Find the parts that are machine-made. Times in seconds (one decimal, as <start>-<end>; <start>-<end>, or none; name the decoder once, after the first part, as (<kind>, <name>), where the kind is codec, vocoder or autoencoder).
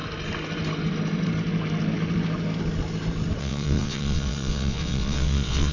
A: 3.4-5.7 (vocoder, WaveNeXt)